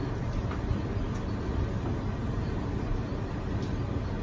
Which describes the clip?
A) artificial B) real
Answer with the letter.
B